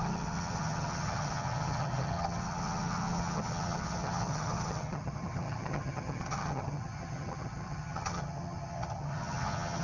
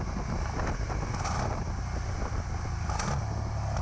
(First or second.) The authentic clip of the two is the second